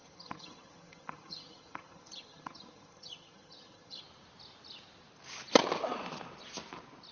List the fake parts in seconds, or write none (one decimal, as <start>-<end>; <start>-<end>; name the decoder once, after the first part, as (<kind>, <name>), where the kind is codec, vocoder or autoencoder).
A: 0.0-4.0 (vocoder, HiFi-GAN)